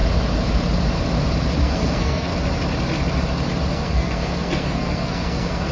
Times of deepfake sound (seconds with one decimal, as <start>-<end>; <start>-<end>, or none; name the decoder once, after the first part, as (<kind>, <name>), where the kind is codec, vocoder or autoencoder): 1.6-2.3 (codec, SNAC); 3.7-5.7